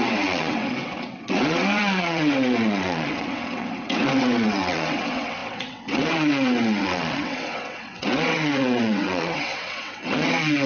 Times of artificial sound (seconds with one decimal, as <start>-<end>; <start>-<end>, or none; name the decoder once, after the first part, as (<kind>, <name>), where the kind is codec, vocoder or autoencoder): 0.0-10.7 (vocoder, WaveNeXt)